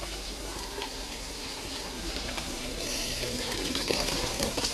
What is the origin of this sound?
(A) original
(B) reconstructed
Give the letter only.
B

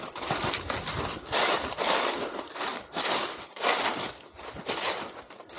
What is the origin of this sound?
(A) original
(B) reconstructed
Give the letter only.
A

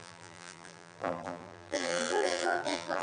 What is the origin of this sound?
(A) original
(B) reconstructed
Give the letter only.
B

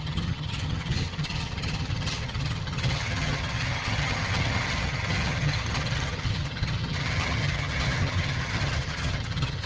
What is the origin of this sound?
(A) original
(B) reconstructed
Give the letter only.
B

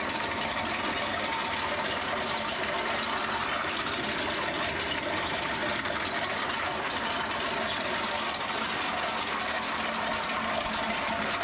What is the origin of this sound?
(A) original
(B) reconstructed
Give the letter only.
A